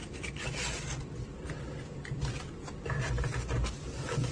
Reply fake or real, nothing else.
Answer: real